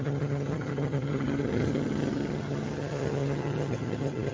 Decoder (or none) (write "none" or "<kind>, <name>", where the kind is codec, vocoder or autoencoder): vocoder, HiFi-GAN